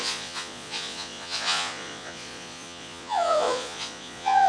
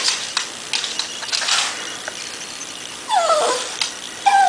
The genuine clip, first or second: second